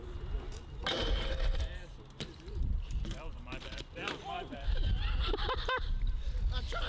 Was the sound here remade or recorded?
remade